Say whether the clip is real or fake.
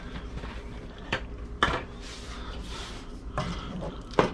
fake